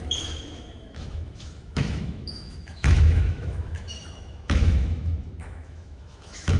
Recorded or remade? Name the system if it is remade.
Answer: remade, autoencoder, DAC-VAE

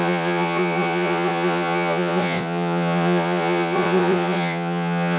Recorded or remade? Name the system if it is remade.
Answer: remade, vocoder, Vocos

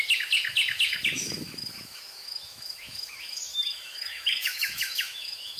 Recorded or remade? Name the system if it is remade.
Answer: remade, autoencoder, DAC-VAE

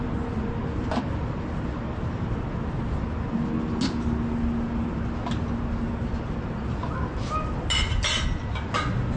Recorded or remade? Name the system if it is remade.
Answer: recorded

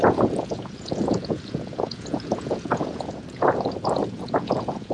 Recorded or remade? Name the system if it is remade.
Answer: remade, vocoder, Vocos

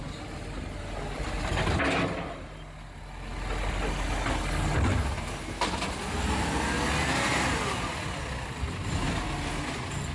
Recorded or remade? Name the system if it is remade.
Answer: recorded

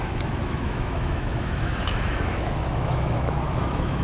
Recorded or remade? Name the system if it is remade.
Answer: remade, autoencoder, DAC-VAE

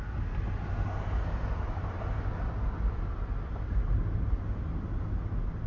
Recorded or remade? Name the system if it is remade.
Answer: recorded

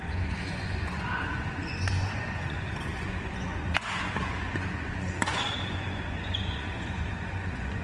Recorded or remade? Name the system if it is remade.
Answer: remade, vocoder, Vocos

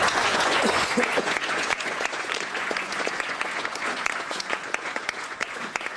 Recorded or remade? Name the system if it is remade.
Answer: remade, vocoder, Vocos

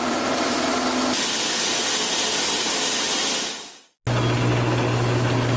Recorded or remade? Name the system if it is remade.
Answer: recorded